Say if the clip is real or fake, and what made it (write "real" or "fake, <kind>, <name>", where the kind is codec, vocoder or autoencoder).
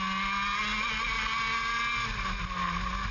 real